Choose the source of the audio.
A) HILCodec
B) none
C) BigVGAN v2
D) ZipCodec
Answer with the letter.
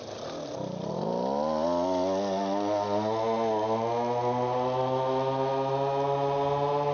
B